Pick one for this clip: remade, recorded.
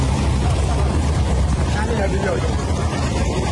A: recorded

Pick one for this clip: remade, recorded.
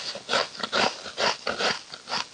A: recorded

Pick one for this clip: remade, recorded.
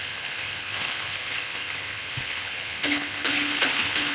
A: remade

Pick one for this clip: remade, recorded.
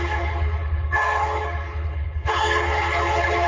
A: remade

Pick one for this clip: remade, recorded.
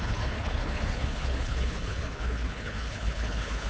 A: remade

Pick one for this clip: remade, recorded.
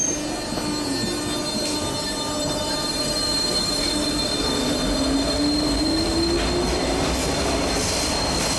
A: recorded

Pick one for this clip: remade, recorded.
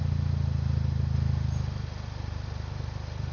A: recorded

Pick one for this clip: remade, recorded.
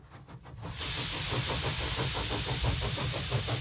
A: recorded